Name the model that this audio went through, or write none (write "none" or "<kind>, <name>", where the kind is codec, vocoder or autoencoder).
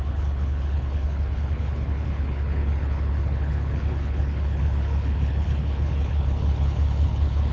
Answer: codec, HILCodec